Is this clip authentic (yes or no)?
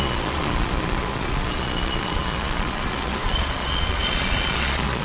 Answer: no